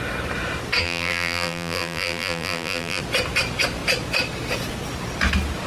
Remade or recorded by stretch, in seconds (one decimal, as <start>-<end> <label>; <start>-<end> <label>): 0.0-0.8 recorded; 0.8-3.0 remade; 3.0-5.7 recorded

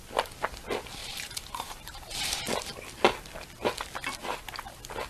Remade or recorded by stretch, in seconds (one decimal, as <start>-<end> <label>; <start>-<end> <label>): 0.0-1.0 recorded; 1.0-2.4 remade; 2.4-5.1 recorded

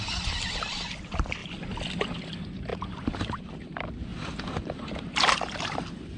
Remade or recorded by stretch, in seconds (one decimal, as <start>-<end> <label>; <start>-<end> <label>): 0.0-2.7 recorded; 2.7-3.5 remade; 3.5-4.1 recorded; 4.1-5.3 remade; 5.3-6.2 recorded

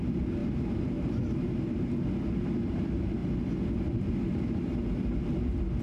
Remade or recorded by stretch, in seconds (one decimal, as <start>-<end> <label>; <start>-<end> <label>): 0.0-0.4 recorded; 0.4-1.2 remade; 1.2-5.8 recorded

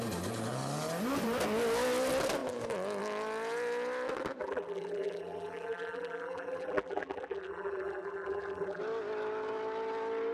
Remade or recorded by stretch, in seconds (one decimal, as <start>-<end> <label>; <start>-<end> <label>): 0.0-4.4 recorded; 4.4-8.8 remade; 8.8-10.3 recorded